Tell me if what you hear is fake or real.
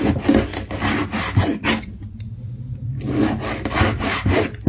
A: real